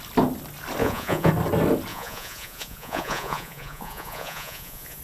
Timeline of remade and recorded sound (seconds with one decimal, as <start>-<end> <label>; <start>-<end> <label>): 0.0-0.8 recorded; 0.8-1.3 remade; 1.3-1.9 recorded; 1.9-5.0 remade